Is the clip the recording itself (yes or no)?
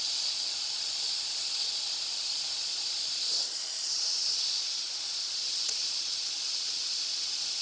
no